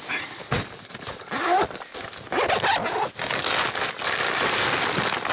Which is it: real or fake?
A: real